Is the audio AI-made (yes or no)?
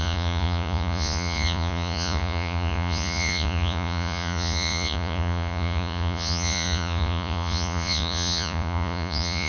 yes